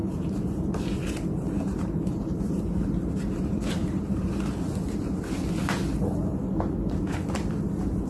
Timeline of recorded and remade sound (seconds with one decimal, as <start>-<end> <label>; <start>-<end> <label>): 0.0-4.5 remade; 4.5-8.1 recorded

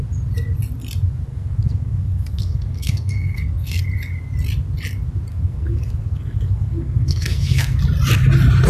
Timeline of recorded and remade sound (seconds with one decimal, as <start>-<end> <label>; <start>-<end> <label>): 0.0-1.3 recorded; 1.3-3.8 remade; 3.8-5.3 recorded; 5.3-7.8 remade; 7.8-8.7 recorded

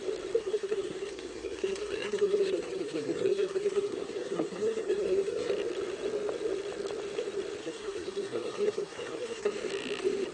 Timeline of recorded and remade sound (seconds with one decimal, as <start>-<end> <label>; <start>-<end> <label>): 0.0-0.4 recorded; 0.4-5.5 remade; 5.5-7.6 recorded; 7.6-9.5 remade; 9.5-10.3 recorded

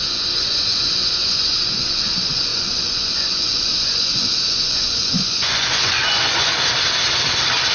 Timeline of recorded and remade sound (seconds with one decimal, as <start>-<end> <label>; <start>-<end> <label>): 0.0-6.5 remade; 6.5-7.7 recorded

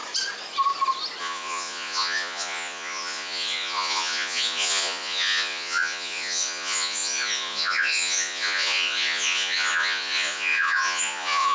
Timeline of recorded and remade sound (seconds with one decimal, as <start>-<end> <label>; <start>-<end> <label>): 0.0-1.2 recorded; 1.2-11.5 remade

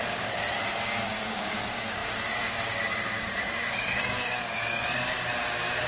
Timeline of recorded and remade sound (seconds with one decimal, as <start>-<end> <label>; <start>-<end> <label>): 0.0-0.4 remade; 0.4-1.1 recorded; 1.1-5.3 remade; 5.3-5.9 recorded

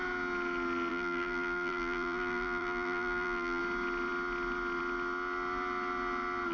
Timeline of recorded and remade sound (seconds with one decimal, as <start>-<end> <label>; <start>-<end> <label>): 0.0-0.9 recorded; 0.9-3.6 remade; 3.6-6.5 recorded

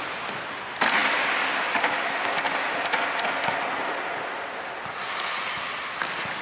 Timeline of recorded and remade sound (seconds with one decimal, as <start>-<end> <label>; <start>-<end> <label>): 0.0-6.4 recorded